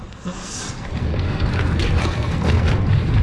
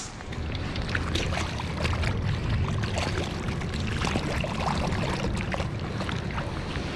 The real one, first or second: second